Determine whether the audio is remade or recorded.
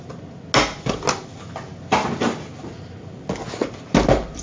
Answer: recorded